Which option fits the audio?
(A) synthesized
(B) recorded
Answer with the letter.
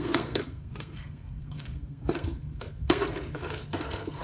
A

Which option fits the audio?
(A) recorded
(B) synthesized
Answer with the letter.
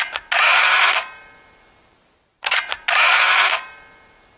A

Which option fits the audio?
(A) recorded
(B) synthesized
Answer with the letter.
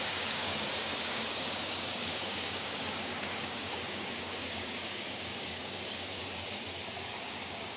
B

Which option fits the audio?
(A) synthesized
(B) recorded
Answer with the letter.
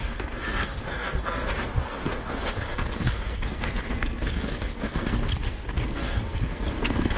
A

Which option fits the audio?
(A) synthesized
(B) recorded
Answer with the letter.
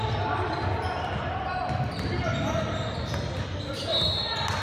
B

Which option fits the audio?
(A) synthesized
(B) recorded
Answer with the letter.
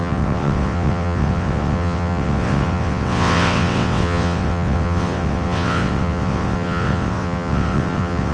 A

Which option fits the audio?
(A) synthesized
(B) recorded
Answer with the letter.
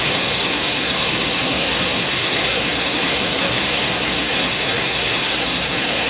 A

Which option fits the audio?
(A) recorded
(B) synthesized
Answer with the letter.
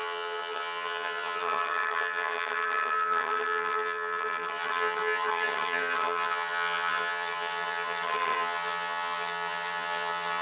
B